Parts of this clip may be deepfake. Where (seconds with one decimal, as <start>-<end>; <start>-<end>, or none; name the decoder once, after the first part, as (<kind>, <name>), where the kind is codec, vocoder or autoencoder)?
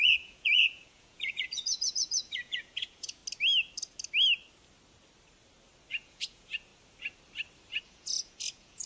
0.0-3.2 (vocoder, Vocos); 5.9-6.7; 7.8-8.9